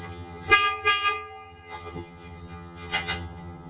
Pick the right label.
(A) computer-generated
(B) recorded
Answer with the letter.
A